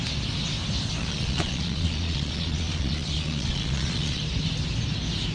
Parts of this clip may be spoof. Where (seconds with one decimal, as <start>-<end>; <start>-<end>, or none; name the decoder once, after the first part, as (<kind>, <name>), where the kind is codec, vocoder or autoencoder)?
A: 1.0-4.2 (vocoder, Vocos)